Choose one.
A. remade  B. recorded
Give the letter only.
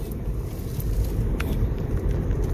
B